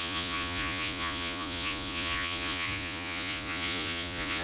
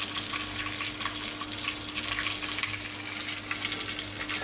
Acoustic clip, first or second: second